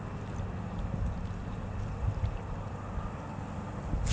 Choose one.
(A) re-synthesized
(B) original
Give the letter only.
B